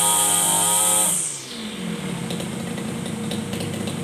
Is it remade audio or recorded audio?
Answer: recorded